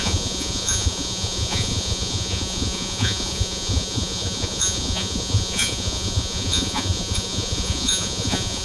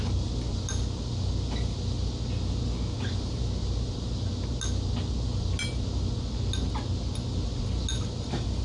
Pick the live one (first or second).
second